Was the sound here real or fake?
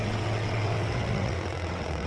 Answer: fake